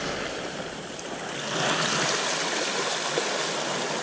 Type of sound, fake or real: real